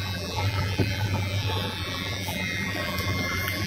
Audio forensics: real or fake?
fake